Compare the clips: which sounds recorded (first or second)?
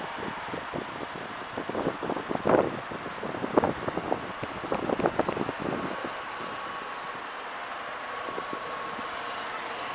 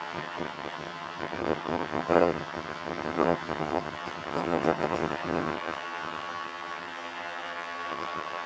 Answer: first